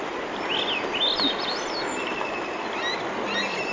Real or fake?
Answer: real